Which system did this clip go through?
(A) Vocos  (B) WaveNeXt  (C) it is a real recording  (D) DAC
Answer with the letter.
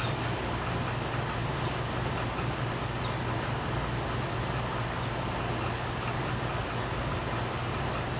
C